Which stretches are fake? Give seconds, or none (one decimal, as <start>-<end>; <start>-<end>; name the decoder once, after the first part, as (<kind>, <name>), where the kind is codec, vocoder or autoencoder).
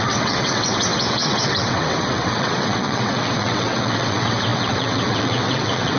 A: 0.0-6.0 (vocoder, WaveNeXt)